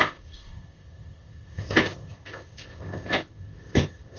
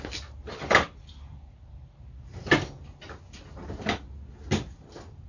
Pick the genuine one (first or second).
second